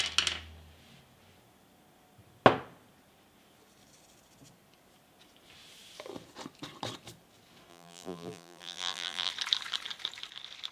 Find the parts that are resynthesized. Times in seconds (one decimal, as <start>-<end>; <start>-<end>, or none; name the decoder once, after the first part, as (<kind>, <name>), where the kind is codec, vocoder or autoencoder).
7.7-9.3 (vocoder, BigVGAN v2)